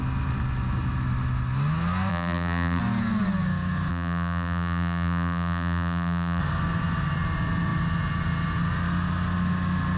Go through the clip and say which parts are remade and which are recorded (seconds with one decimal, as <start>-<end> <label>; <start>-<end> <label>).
0.0-2.1 recorded; 2.1-2.8 remade; 2.8-3.9 recorded; 3.9-6.4 remade; 6.4-10.0 recorded